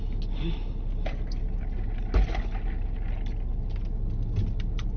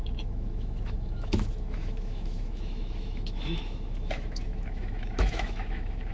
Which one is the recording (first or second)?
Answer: first